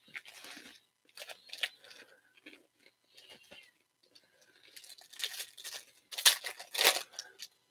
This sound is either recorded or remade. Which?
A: recorded